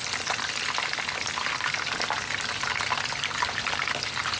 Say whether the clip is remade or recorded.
recorded